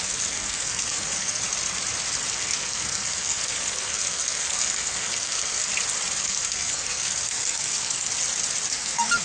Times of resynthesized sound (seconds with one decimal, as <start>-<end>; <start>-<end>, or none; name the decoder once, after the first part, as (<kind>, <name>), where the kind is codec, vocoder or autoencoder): 0.0-1.4 (codec, SNAC); 2.3-5.7; 6.2-8.1; 8.7-9.2